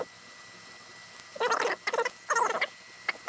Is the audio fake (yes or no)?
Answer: no